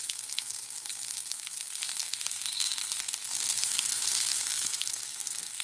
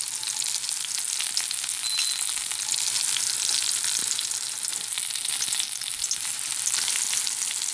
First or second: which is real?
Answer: second